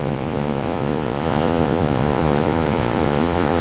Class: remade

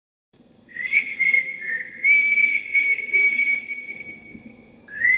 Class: remade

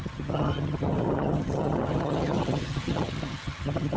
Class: remade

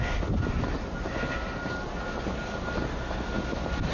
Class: recorded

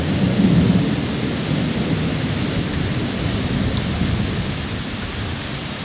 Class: recorded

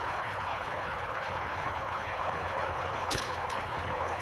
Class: remade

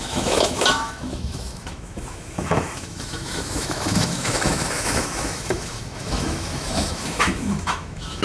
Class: remade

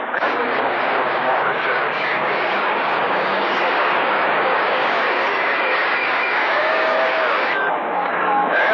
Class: remade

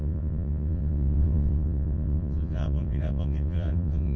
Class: remade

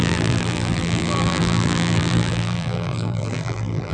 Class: remade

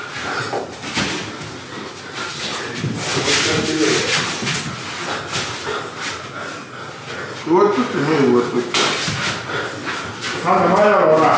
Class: recorded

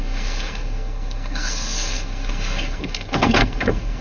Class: remade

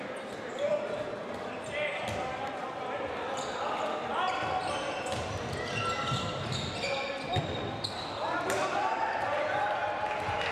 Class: recorded